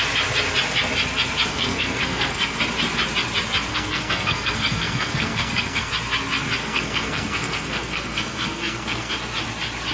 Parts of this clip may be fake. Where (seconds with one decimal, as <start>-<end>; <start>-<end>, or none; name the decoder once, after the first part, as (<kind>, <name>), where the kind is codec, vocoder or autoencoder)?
1.5-2.6 (codec, SNAC); 3.7-5.9; 6.6-9.1